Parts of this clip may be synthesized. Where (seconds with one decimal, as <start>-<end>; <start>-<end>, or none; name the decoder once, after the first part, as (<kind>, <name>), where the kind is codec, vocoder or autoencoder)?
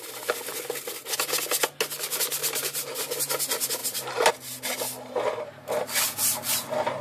2.4-3.0 (vocoder, BigVGAN v2); 3.8-4.3